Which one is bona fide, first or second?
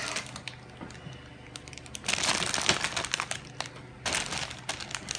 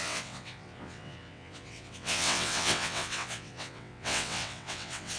first